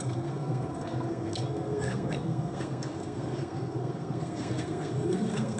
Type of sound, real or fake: fake